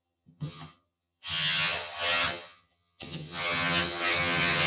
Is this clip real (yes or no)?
no